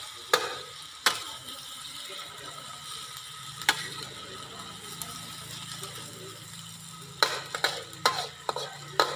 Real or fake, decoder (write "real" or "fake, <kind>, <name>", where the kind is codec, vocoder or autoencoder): real